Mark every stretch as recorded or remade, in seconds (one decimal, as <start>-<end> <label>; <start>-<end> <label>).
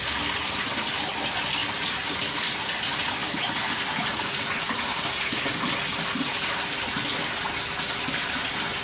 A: 0.0-8.8 recorded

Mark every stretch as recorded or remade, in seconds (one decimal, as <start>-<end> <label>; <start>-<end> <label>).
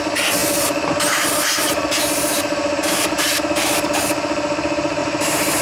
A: 0.0-0.4 recorded; 0.4-3.4 remade; 3.4-5.0 recorded; 5.0-5.6 remade